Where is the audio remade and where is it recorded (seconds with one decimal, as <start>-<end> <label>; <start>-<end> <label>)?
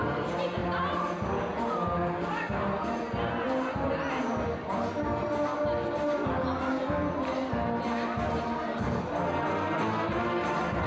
0.0-10.9 recorded